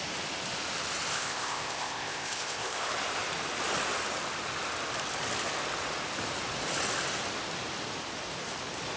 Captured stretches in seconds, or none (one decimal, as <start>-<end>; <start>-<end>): 0.0-1.1; 2.9-9.0